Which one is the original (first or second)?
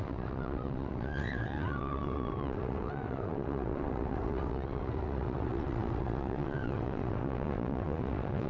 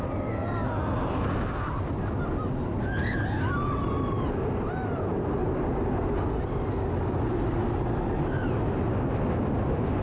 second